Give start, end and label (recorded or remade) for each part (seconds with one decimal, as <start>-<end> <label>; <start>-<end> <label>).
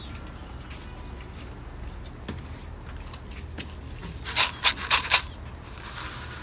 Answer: 0.0-6.4 recorded